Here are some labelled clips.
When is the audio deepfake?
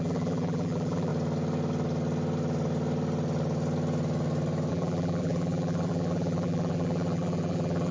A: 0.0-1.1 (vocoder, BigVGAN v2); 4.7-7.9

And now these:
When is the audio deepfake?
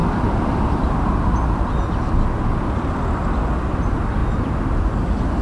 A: none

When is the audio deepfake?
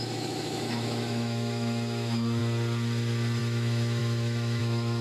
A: 0.0-2.4 (autoencoder, DAC-VAE); 3.4-5.0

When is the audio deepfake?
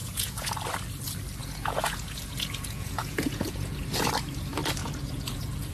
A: 0.0-0.5 (vocoder, Vocos); 1.4-3.8; 4.8-5.7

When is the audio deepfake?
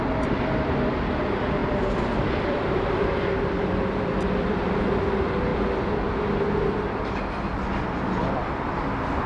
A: 1.6-4.6 (vocoder, BigVGAN v2)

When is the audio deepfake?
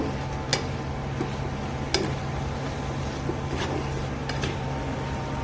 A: none